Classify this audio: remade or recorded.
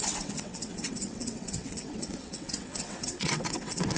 remade